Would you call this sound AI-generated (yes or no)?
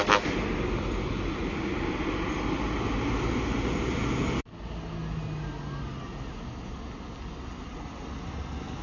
no